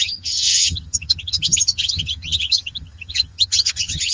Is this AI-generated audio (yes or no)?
yes